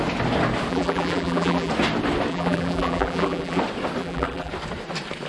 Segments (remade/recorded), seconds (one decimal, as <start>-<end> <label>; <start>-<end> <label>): 0.0-0.7 recorded; 0.7-1.7 remade; 1.7-2.3 recorded; 2.3-3.6 remade; 3.6-4.0 recorded; 4.0-4.5 remade; 4.5-5.3 recorded

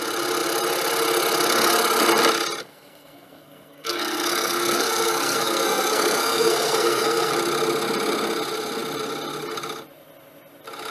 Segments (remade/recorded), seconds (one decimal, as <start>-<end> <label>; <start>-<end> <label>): 0.0-2.6 recorded; 2.6-7.3 remade; 7.3-10.9 recorded

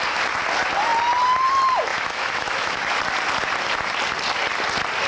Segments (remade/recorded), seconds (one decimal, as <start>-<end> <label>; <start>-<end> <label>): 0.0-1.9 recorded; 1.9-3.0 remade; 3.0-5.1 recorded

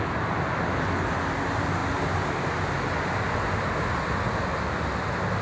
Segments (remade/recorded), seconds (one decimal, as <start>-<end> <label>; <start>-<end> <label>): 0.0-5.4 recorded

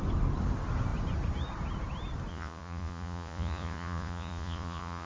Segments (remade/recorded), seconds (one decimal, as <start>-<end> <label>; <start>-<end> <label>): 0.0-2.3 recorded; 2.3-5.1 remade

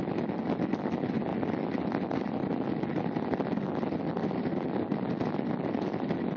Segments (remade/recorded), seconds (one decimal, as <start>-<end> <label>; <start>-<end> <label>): 0.0-6.4 recorded

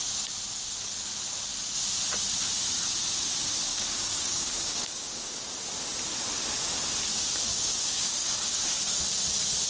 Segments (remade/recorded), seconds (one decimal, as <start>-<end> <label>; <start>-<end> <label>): 0.0-3.7 recorded; 3.7-5.5 remade; 5.5-7.5 recorded; 7.5-9.0 remade; 9.0-9.7 recorded

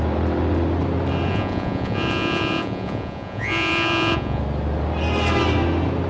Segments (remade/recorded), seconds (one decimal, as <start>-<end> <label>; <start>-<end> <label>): 0.0-1.3 recorded; 1.3-4.4 remade; 4.4-6.1 recorded